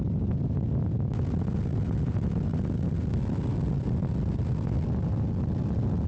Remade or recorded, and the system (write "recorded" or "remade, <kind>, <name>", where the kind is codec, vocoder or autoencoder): recorded